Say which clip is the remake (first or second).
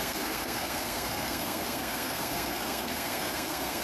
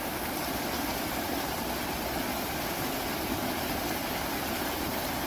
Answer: first